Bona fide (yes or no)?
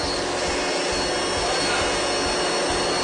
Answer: yes